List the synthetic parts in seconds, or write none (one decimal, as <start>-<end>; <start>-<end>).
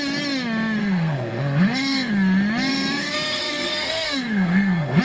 0.8-2.1; 2.7-5.0